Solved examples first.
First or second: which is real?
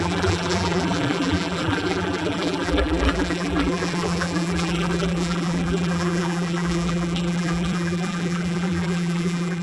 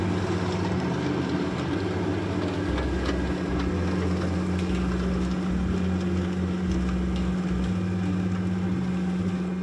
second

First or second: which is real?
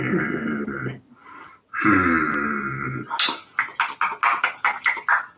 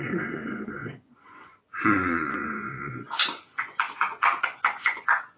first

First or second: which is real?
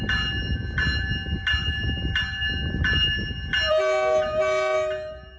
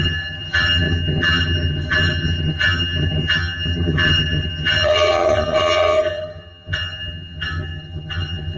first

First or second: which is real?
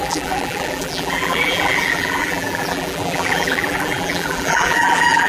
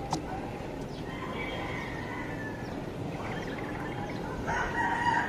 second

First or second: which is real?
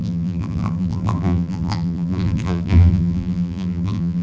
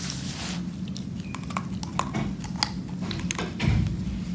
second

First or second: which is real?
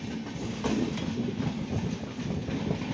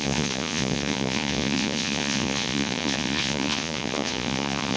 first